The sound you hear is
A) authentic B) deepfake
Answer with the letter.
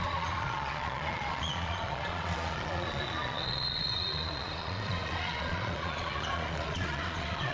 B